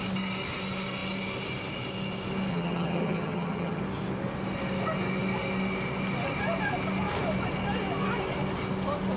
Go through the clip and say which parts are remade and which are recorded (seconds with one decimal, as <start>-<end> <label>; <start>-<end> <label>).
0.0-2.5 recorded; 2.5-3.8 remade; 3.8-9.2 recorded